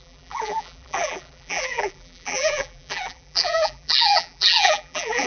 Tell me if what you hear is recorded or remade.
remade